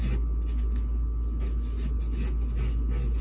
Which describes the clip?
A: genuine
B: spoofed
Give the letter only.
A